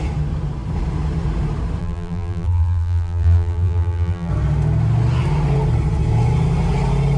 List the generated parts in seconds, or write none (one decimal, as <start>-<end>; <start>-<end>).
1.8-4.3